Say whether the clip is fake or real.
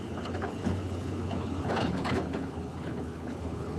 fake